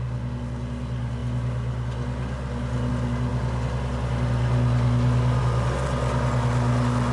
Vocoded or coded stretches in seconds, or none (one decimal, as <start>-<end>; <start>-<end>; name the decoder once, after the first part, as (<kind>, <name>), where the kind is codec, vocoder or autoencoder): none